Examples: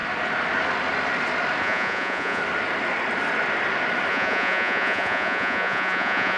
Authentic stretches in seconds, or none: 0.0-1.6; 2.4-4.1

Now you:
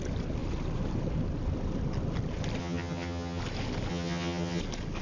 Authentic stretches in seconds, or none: 0.0-2.6; 3.4-3.9; 4.6-5.0

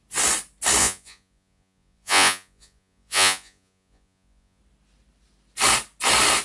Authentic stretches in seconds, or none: 0.0-0.8; 4.6-6.4

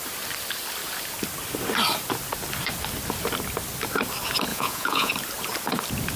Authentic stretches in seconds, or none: 0.0-4.5; 5.1-6.2

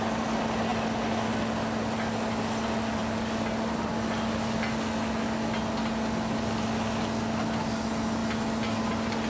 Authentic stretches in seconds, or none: 0.0-9.3

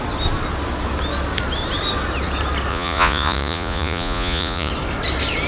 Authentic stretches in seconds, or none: 0.0-2.7; 4.7-5.5

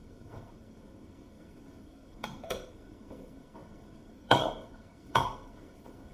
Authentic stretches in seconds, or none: none